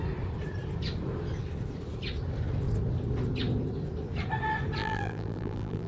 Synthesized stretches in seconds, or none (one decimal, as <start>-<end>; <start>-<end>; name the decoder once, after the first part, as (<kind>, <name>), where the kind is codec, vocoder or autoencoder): 4.8-5.9 (vocoder, BigVGAN v2)